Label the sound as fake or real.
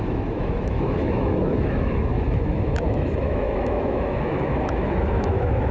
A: fake